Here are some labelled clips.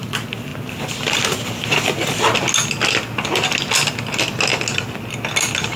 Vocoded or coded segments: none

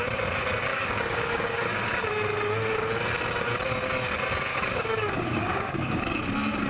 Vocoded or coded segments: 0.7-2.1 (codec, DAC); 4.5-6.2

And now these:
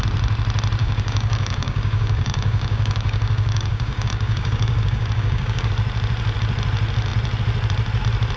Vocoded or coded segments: 0.8-5.7 (codec, DAC)

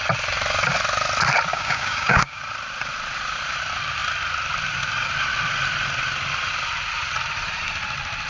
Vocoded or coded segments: 1.5-2.4 (codec, DAC)